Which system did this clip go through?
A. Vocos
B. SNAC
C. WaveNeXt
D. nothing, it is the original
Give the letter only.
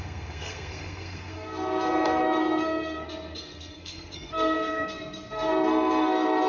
B